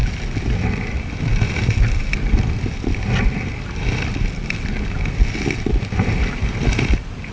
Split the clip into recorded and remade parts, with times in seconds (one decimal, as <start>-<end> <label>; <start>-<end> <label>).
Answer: 0.0-7.3 recorded